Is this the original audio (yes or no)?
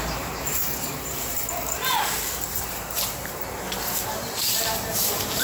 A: no